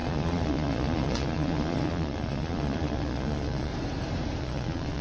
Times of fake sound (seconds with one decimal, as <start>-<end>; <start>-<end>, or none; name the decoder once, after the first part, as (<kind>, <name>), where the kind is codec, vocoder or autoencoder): 0.0-3.7 (vocoder, Vocos); 4.4-5.0